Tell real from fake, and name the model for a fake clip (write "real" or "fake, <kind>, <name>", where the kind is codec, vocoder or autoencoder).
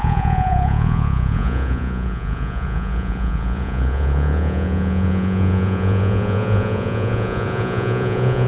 fake, vocoder, Vocos